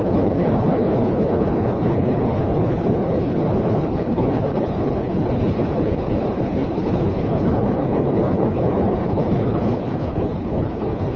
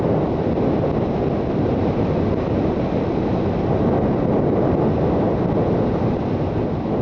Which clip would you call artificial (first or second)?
first